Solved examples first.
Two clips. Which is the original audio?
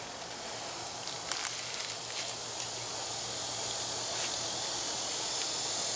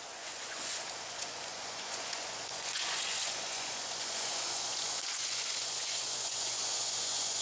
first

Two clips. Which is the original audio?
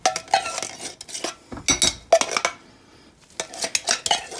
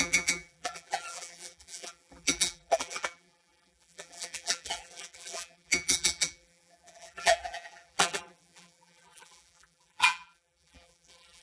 first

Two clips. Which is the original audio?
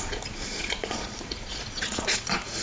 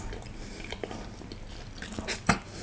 second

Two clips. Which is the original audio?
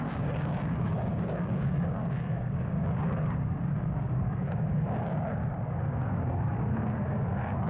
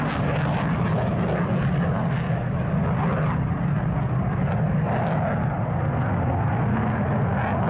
second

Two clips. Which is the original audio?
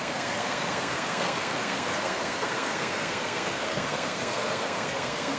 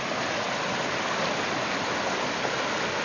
second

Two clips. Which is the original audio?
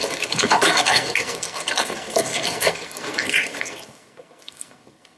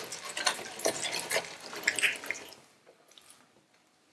second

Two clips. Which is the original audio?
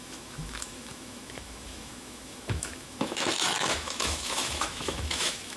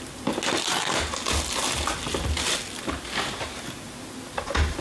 second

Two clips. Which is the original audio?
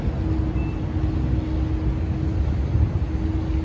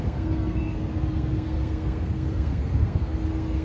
first